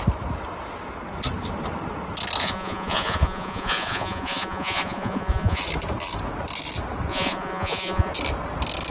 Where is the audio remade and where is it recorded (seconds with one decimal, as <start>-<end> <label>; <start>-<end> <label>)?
0.0-2.4 recorded; 2.4-5.6 remade; 5.6-7.1 recorded; 7.1-8.1 remade; 8.1-8.9 recorded